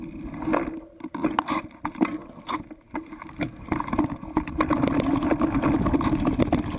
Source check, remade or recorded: recorded